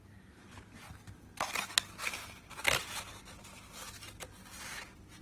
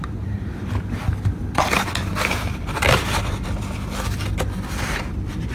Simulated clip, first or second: second